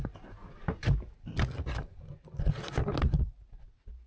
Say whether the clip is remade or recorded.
recorded